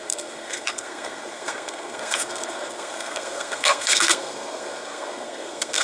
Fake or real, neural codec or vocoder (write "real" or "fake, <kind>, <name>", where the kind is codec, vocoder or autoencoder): fake, codec, SNAC